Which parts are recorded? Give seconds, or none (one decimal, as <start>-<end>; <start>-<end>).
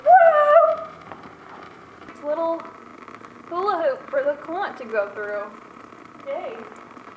0.0-0.6; 2.9-3.8; 4.9-5.5